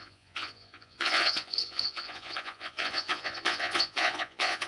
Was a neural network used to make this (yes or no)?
yes